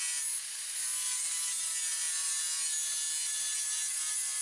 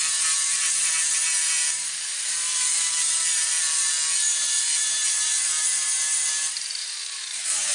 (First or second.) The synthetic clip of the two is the second